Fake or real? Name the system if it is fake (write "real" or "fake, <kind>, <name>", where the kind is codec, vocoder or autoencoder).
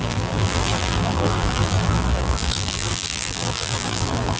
fake, vocoder, BigVGAN v2